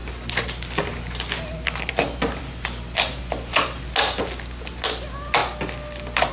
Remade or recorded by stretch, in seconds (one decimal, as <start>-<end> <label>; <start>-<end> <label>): 0.0-6.3 recorded